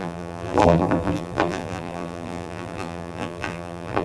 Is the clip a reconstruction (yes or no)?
yes